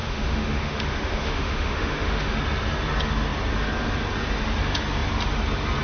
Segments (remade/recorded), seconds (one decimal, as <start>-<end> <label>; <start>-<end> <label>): 0.0-2.4 remade; 2.4-5.8 recorded